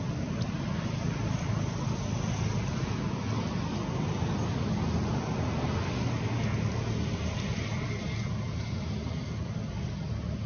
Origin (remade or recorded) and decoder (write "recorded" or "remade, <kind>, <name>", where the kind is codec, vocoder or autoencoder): recorded